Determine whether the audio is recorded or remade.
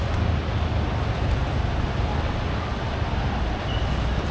recorded